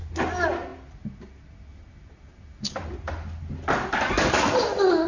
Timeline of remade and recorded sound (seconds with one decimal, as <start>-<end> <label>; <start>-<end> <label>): 0.0-5.1 recorded